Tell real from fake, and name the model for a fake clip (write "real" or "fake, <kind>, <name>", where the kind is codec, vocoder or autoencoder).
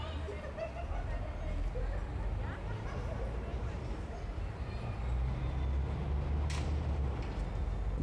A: real